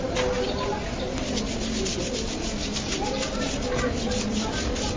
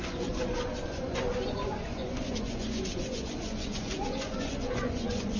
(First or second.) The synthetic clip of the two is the second